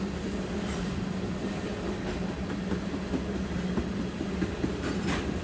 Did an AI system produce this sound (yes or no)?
yes